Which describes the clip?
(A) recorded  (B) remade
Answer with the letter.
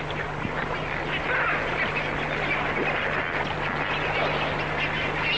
A